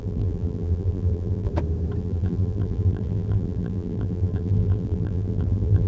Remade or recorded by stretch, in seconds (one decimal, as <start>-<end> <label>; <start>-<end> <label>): 0.0-1.5 remade; 1.5-2.0 recorded; 2.0-5.9 remade